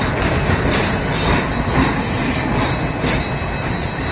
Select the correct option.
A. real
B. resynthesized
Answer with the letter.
A